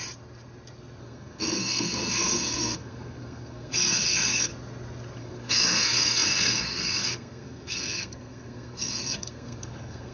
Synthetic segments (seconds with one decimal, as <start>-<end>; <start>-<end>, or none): 1.0-4.5; 5.2-10.1